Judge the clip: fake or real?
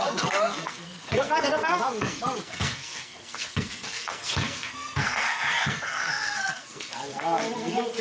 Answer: fake